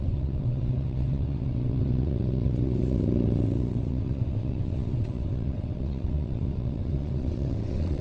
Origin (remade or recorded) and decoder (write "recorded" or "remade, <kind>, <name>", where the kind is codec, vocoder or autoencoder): remade, vocoder, WaveNeXt